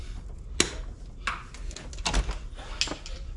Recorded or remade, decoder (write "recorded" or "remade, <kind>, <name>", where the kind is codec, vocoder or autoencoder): recorded